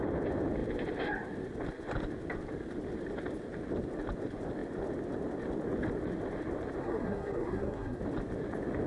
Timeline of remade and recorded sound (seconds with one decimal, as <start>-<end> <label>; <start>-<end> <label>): 0.0-6.8 recorded; 6.8-8.0 remade; 8.0-8.9 recorded